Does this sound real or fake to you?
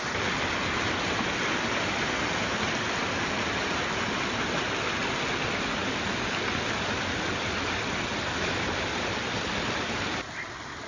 real